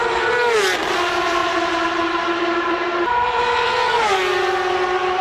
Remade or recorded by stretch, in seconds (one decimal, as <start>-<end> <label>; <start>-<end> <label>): 0.0-1.4 recorded; 1.4-3.4 remade; 3.4-5.2 recorded